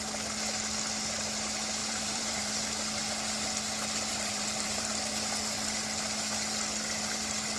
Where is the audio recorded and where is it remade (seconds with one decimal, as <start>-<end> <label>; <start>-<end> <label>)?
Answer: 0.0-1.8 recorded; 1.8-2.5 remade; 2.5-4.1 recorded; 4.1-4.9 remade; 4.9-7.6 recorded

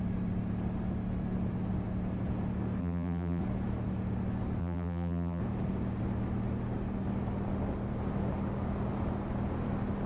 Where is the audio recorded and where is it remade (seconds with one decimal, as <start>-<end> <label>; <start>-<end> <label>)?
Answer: 0.0-2.8 recorded; 2.8-3.4 remade; 3.4-4.6 recorded; 4.6-5.4 remade; 5.4-10.1 recorded

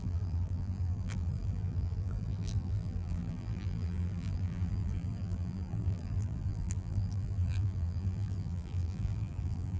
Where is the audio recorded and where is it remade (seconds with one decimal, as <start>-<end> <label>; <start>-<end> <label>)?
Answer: 0.0-9.8 remade

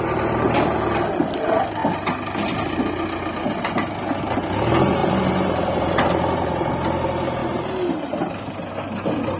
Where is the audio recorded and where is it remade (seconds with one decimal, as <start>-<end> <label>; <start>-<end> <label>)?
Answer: 0.0-5.0 recorded; 5.0-6.7 remade; 6.7-9.4 recorded

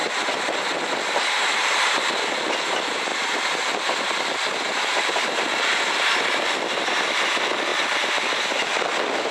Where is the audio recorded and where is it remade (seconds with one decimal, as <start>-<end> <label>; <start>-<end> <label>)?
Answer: 0.0-9.3 remade

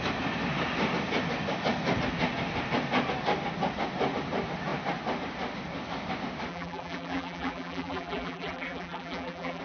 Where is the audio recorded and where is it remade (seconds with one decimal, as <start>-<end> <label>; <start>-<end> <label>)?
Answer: 0.0-6.5 recorded; 6.5-9.6 remade